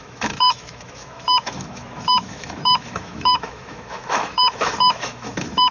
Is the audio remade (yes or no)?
yes